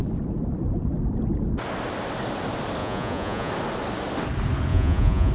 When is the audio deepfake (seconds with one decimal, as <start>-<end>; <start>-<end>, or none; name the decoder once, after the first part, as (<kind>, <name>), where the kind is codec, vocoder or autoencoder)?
2.8-3.5 (vocoder, Vocos); 4.7-5.3